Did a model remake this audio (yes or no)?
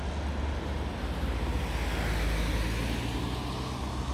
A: no